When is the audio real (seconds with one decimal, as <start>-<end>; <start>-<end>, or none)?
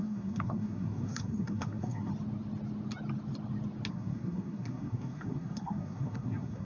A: 2.1-3.9